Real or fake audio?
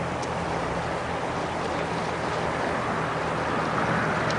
real